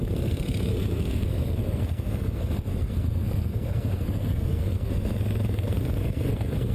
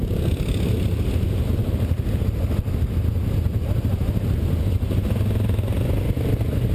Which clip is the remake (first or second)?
first